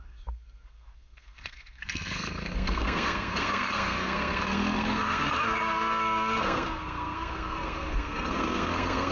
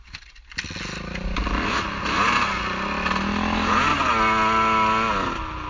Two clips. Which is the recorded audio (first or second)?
second